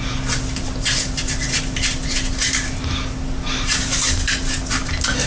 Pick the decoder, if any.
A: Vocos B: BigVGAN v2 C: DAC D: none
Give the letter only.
D